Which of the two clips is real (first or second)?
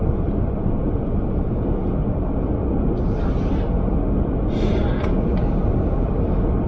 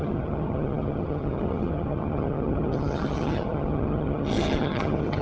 first